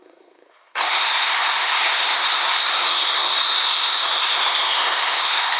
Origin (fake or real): fake